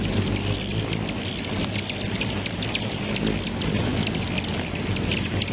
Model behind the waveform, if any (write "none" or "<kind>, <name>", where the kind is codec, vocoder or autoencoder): none